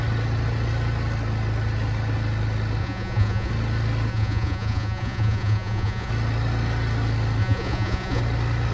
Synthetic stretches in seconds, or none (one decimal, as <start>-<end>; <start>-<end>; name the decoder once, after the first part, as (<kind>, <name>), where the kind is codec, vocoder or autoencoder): 2.8-3.5 (vocoder, Vocos); 4.1-6.1; 7.4-8.2

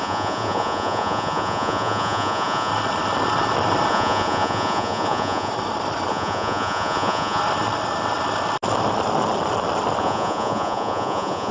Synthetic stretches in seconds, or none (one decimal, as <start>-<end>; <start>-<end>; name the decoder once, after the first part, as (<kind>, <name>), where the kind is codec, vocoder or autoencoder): 0.0-2.7 (vocoder, Vocos); 3.9-5.5; 6.1-7.4; 10.0-11.5

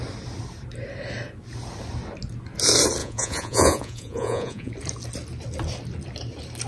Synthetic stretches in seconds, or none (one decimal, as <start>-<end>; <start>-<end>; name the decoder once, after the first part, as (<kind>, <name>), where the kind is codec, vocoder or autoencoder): 3.0-4.7 (vocoder, Vocos)

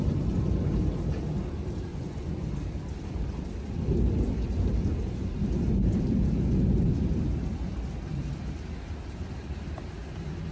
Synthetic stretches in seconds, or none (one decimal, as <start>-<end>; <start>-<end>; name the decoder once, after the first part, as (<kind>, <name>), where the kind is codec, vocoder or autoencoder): 1.9-2.5 (vocoder, Vocos)

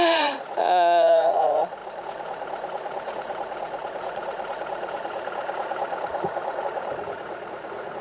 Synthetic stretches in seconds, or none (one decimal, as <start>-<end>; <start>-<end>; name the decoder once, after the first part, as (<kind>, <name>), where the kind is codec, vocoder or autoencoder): 0.0-8.0 (vocoder, Vocos)

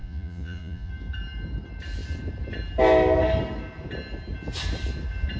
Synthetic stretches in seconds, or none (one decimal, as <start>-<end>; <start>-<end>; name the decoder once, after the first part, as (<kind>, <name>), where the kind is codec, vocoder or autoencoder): 0.0-0.9 (vocoder, Vocos)

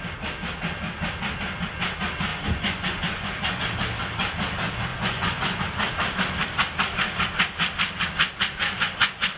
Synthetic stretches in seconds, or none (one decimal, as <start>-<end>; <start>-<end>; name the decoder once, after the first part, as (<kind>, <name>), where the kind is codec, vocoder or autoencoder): 2.3-3.6 (vocoder, Vocos); 4.9-5.6; 8.6-9.4